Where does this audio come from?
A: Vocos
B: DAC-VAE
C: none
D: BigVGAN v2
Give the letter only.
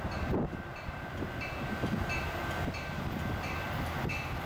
C